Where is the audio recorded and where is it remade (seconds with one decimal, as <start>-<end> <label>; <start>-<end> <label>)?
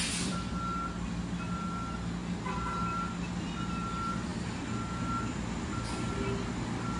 0.0-7.0 recorded